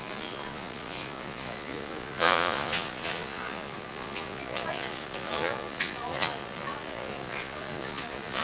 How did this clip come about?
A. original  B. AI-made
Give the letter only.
B